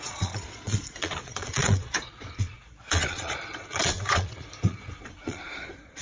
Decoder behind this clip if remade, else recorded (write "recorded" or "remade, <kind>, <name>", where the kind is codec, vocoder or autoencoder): remade, vocoder, Vocos